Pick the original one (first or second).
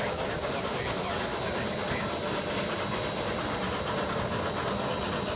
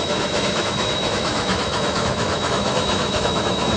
first